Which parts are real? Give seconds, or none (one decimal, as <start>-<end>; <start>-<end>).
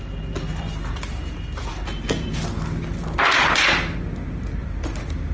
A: 0.0-5.3